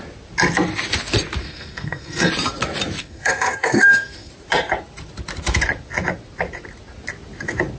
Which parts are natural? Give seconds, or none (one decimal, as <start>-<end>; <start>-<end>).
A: 0.0-1.4; 2.3-3.0; 4.3-7.8